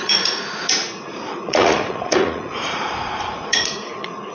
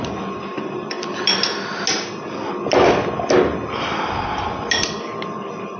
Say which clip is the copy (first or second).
first